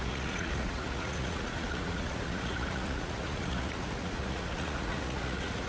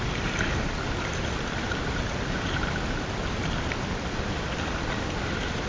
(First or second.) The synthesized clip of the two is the first